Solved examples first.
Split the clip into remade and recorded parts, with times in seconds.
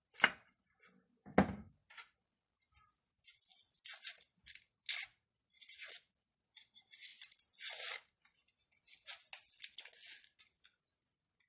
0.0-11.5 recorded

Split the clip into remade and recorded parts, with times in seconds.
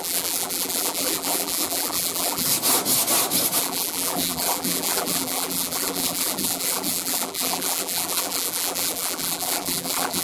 0.0-2.5 remade; 2.5-3.6 recorded; 3.6-10.2 remade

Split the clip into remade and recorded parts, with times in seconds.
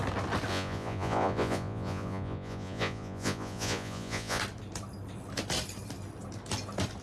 0.0-0.5 recorded; 0.5-4.4 remade; 4.4-7.0 recorded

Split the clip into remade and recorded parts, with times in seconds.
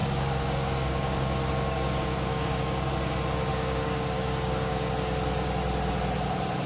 0.0-2.9 remade; 2.9-3.5 recorded; 3.5-4.9 remade; 4.9-6.7 recorded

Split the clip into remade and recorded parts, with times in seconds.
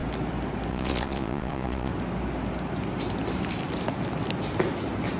0.0-0.7 recorded; 0.7-1.9 remade; 1.9-5.2 recorded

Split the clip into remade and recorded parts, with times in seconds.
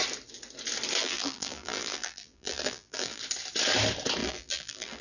0.0-1.0 recorded; 1.0-3.2 remade; 3.2-4.2 recorded; 4.2-5.0 remade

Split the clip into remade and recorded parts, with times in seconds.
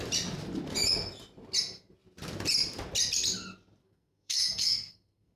0.0-3.8 recorded; 3.8-5.4 remade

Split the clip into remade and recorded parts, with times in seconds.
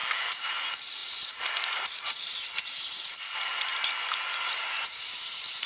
0.0-0.5 remade; 0.5-5.7 recorded